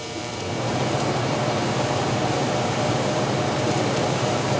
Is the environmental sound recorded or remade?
remade